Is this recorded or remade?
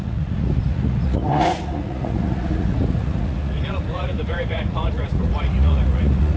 remade